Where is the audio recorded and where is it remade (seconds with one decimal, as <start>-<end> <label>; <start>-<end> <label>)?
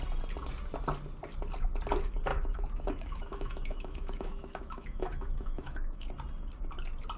0.0-2.3 recorded; 2.3-6.1 remade; 6.1-7.2 recorded